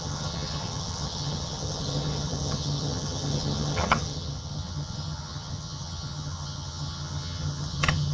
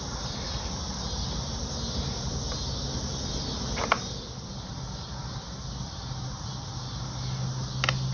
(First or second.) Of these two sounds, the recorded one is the second